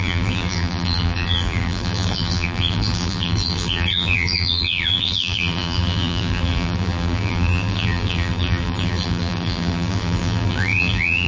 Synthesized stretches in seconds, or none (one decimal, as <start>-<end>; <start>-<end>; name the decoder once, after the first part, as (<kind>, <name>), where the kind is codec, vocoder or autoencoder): 0.0-11.3 (vocoder, BigVGAN v2)